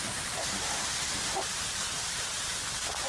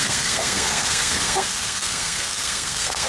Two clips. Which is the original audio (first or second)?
first